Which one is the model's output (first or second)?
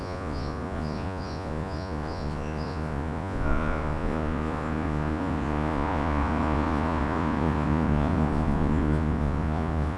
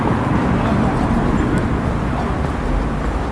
first